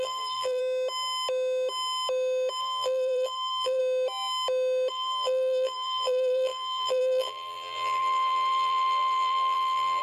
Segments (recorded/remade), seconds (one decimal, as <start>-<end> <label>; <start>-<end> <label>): 0.0-0.6 remade; 0.6-2.6 recorded; 2.6-3.8 remade; 3.8-4.9 recorded; 4.9-10.0 remade